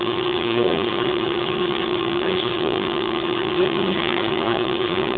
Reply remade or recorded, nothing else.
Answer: remade